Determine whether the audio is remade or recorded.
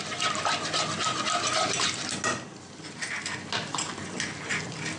recorded